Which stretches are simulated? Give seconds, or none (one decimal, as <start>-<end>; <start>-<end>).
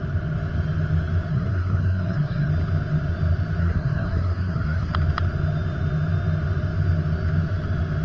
1.3-2.5; 3.6-4.9